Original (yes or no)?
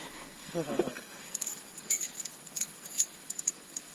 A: no